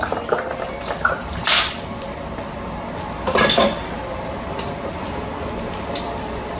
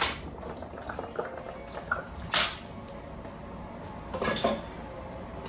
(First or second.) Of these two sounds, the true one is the second